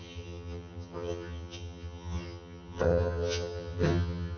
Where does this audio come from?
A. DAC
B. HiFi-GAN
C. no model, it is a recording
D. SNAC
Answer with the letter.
B